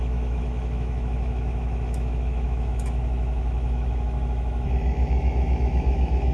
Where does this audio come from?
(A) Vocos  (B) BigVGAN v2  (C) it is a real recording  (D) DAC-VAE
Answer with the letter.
D